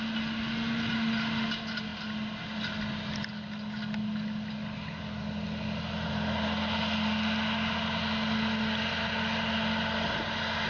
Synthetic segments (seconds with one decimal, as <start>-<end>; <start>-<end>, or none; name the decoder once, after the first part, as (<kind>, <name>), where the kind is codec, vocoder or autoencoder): none